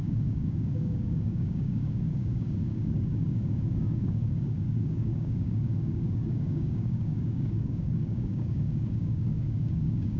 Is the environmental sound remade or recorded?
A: remade